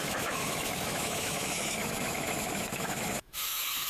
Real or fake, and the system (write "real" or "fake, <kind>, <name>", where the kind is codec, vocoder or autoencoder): fake, autoencoder, DAC-VAE